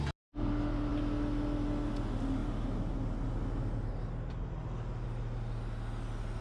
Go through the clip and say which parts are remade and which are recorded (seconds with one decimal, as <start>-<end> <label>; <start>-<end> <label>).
0.0-6.4 recorded